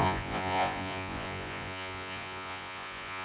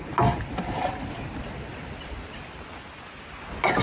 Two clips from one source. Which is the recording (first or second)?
second